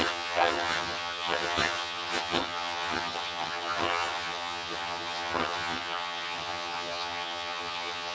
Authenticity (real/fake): fake